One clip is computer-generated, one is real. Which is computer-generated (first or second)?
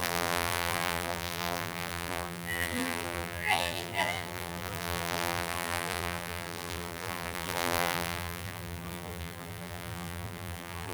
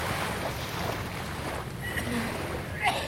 first